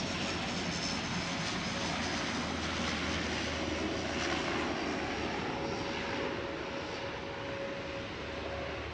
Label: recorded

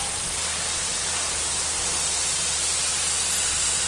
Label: recorded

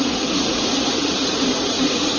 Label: remade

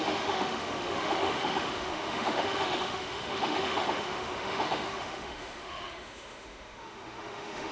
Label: remade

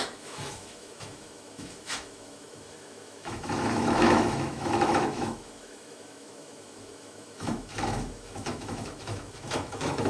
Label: remade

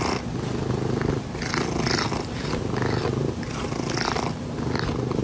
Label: recorded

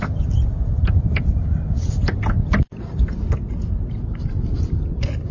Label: recorded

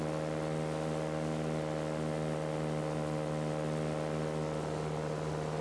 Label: recorded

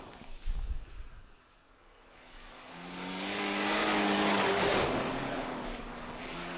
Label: remade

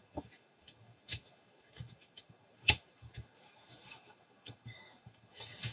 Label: remade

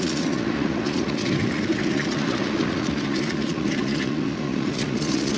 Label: remade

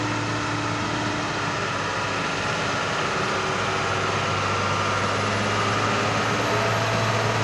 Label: recorded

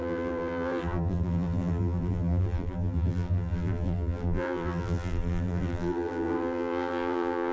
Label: remade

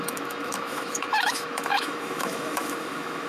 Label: remade